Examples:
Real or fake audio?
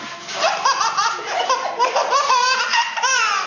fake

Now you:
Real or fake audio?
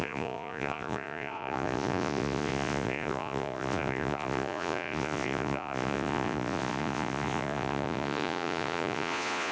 fake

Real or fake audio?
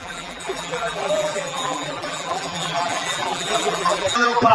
fake